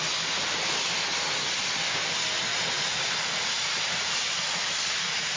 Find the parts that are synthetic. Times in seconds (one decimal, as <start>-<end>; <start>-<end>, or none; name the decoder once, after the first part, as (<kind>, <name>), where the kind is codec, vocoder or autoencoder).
none